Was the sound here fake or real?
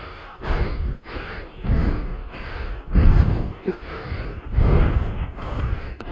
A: fake